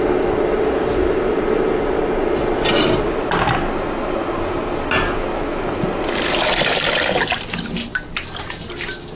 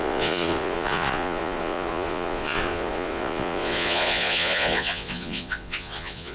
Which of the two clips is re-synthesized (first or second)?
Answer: second